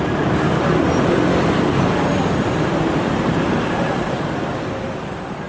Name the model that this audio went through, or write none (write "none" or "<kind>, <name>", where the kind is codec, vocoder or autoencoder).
none